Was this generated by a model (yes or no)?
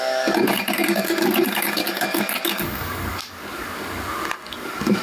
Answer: yes